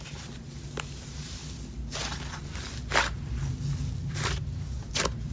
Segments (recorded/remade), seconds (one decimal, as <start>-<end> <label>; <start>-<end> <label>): 0.0-1.4 remade; 1.4-4.4 recorded; 4.4-5.3 remade